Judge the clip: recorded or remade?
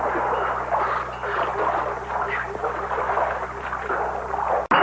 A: recorded